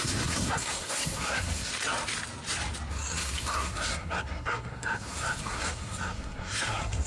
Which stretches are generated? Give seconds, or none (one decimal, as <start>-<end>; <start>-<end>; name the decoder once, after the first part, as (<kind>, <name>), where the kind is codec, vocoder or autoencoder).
0.0-1.7 (codec, SNAC); 2.9-7.1